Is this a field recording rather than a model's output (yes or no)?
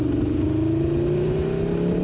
yes